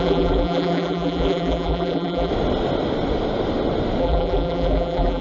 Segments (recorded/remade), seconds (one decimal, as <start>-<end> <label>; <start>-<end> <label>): 0.0-2.3 remade; 2.3-4.0 recorded; 4.0-5.2 remade